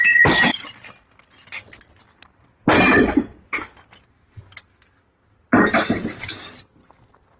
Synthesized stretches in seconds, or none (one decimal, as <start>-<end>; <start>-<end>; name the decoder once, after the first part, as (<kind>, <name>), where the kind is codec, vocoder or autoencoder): none